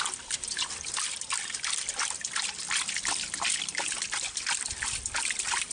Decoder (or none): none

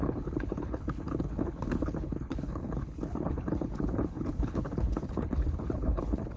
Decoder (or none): codec, HILCodec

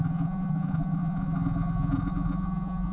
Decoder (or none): vocoder, Vocos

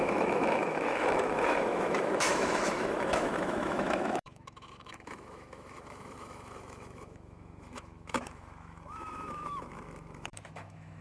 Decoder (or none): autoencoder, DAC-VAE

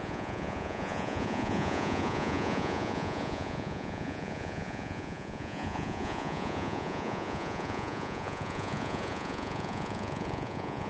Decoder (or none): vocoder, Vocos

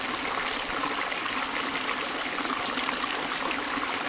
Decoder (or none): none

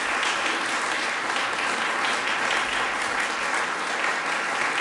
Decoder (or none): none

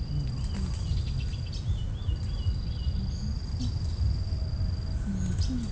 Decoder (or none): none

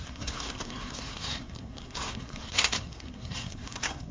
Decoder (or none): codec, SNAC